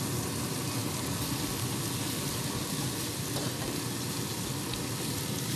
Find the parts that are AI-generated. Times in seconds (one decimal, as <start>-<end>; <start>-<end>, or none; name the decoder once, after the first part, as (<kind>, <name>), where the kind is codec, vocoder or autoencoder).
none